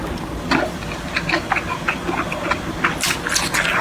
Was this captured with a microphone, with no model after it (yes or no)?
yes